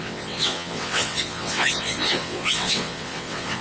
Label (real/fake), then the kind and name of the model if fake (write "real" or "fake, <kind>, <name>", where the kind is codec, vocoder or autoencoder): fake, vocoder, WaveNeXt